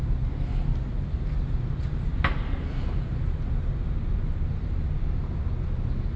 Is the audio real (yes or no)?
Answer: yes